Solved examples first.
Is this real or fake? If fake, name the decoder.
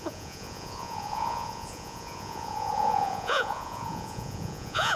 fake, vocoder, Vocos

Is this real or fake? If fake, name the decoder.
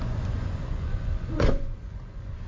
fake, vocoder, Vocos